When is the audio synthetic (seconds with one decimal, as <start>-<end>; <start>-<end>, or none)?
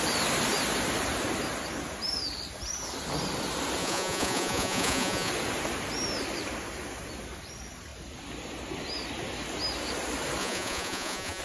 3.8-5.3; 10.4-11.4